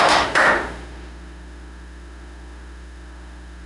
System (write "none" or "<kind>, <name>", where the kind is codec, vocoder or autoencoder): autoencoder, DAC-VAE